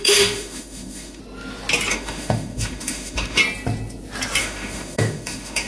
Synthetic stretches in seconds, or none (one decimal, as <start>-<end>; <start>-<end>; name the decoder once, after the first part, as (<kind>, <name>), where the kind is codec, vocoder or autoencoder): 0.0-1.2 (autoencoder, DAC-VAE); 1.9-3.4; 4.4-5.7